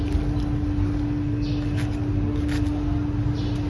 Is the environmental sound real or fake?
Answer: real